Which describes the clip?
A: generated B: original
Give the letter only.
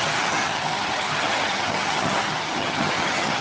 A